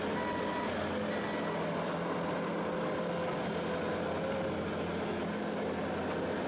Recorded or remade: recorded